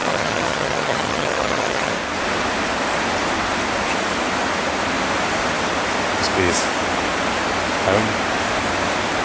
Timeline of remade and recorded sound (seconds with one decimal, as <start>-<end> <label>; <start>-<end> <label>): 0.0-1.9 remade; 1.9-9.2 recorded